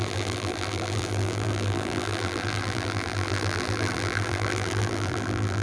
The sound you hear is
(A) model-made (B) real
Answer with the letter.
A